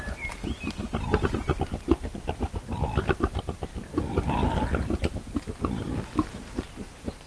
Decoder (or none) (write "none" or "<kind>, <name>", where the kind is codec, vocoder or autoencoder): none